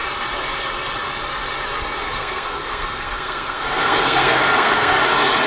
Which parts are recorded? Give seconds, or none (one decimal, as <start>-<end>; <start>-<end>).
0.0-2.0; 5.0-5.5